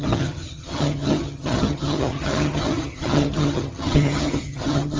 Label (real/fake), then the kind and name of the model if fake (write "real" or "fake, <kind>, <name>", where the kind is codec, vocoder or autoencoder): fake, vocoder, HiFi-GAN